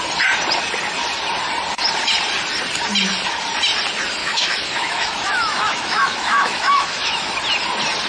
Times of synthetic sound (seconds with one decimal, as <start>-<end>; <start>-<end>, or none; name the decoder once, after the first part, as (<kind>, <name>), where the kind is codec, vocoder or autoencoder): 4.2-7.3 (autoencoder, DAC-VAE)